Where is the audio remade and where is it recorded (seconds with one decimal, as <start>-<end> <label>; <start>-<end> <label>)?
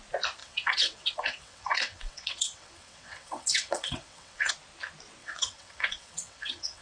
0.0-0.4 recorded; 0.4-4.5 remade; 4.5-5.2 recorded; 5.2-6.8 remade